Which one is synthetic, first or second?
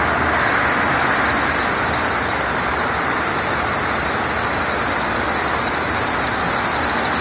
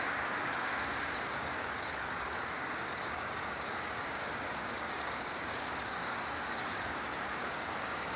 second